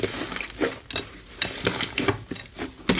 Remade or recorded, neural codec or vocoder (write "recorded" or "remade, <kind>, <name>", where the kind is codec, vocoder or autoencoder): recorded